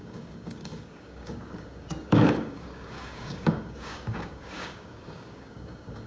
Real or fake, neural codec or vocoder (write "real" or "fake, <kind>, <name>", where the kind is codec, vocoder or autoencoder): fake, codec, DAC